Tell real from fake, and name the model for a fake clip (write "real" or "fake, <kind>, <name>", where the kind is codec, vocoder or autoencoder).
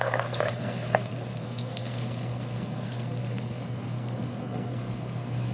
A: fake, codec, SNAC